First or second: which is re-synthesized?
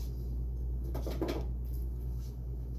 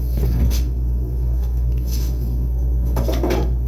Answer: second